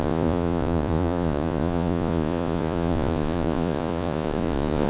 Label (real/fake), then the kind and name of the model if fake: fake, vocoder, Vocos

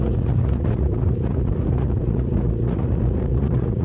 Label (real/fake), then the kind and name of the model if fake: fake, vocoder, Vocos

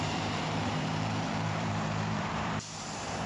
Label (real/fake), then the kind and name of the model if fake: fake, vocoder, BigVGAN v2